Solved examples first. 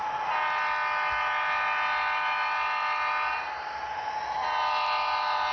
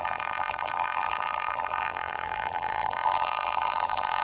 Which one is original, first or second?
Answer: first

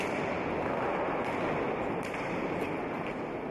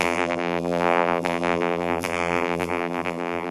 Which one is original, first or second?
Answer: first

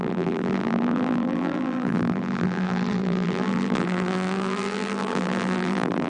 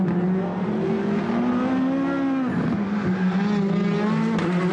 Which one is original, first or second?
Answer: second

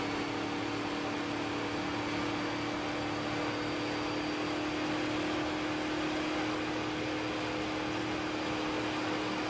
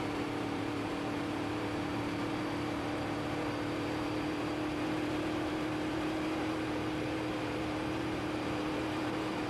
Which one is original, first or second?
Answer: first